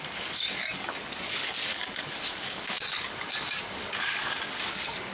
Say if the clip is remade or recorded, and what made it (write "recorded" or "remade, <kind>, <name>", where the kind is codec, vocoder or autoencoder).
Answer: remade, codec, DAC